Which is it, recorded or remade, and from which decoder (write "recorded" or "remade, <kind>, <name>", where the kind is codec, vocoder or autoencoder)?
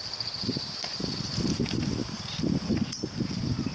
recorded